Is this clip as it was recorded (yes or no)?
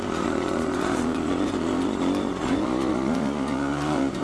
no